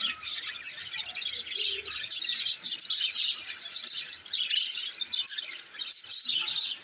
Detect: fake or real real